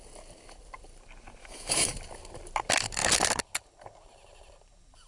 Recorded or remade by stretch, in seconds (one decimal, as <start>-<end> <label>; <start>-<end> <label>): 0.0-1.4 recorded; 1.4-1.9 remade; 1.9-5.1 recorded